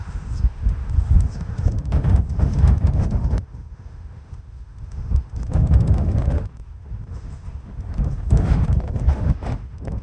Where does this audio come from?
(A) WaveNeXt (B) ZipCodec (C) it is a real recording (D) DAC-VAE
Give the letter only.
D